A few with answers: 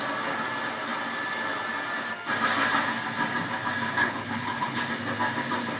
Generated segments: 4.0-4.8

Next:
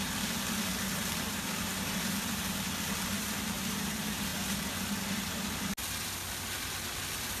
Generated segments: none

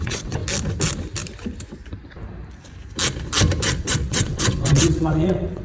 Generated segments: 0.0-0.4; 3.8-5.6

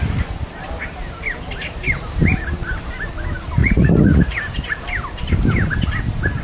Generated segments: 3.6-4.4

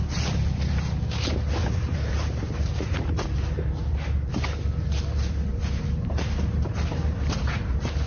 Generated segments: 1.6-3.9; 5.5-8.1